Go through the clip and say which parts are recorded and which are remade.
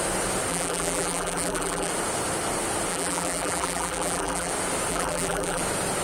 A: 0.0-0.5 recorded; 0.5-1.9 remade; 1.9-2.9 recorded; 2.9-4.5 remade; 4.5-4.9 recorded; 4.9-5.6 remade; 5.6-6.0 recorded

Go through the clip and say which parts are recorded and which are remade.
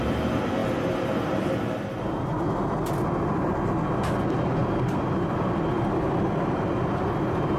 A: 0.0-0.6 recorded; 0.6-2.1 remade; 2.1-4.6 recorded; 4.6-7.6 remade